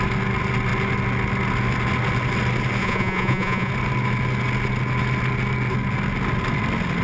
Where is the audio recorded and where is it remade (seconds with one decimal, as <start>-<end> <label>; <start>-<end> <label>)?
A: 0.0-2.8 recorded; 2.8-3.7 remade; 3.7-7.0 recorded